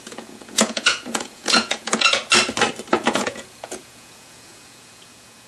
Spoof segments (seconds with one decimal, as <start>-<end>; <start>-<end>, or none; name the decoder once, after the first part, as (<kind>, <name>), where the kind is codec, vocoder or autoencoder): 0.0-2.2 (vocoder, Vocos); 2.9-5.5